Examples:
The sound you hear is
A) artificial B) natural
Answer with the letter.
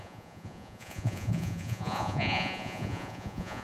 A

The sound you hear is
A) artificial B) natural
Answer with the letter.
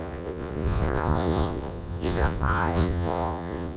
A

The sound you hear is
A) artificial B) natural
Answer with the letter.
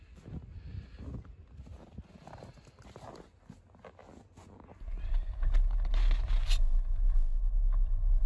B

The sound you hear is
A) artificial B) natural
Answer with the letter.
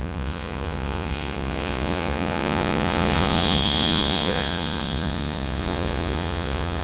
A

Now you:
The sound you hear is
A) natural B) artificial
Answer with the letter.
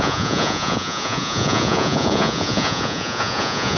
B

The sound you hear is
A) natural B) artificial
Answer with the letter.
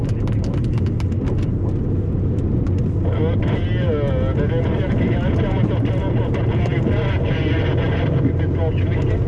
A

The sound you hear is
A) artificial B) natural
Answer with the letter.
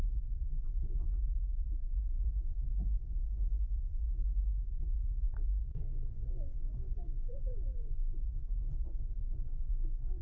A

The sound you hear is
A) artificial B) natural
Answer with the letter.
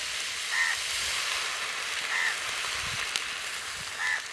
B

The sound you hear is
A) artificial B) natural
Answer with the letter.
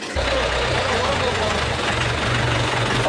A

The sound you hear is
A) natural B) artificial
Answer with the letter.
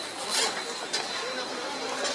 A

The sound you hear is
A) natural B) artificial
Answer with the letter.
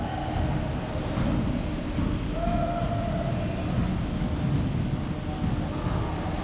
A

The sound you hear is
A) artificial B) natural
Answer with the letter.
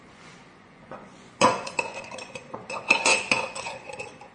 A